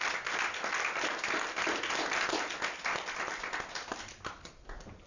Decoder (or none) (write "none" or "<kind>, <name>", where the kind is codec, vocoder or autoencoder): none